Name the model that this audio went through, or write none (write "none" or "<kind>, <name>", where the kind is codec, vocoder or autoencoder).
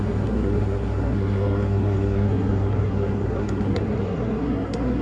codec, SNAC